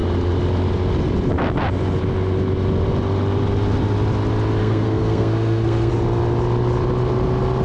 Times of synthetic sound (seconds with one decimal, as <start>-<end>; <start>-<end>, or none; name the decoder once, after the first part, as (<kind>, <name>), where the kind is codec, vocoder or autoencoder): 4.6-5.9 (codec, SNAC)